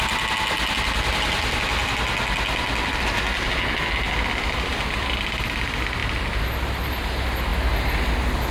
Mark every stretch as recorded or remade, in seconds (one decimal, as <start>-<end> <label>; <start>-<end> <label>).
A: 0.0-4.7 recorded; 4.7-5.6 remade; 5.6-8.5 recorded